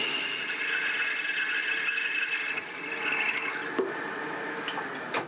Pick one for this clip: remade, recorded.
recorded